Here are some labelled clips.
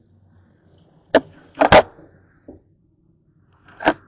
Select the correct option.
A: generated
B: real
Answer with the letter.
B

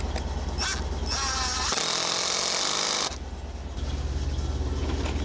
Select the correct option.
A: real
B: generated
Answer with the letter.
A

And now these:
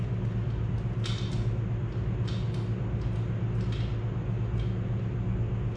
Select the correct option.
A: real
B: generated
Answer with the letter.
A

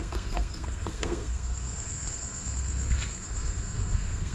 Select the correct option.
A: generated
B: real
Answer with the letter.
A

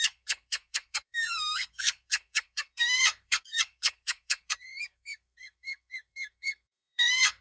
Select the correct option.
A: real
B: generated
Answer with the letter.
B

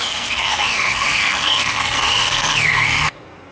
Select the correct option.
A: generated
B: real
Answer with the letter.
A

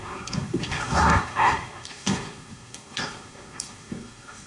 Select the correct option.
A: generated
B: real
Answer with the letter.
A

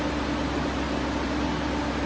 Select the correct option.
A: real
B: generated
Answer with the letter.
A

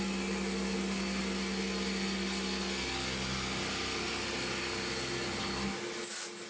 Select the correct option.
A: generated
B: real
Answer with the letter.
B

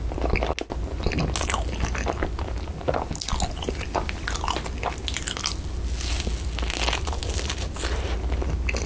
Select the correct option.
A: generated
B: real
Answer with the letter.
B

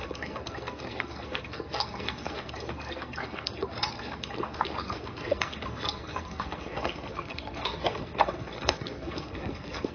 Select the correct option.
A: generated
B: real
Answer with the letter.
A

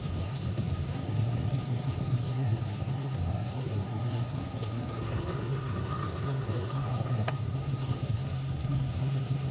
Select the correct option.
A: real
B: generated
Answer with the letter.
B